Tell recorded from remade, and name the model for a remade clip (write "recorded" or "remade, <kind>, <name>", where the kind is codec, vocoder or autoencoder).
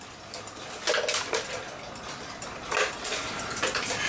recorded